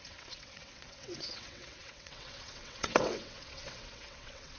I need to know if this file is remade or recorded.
remade